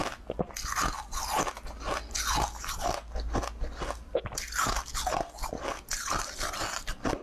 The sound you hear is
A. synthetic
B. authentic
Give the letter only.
B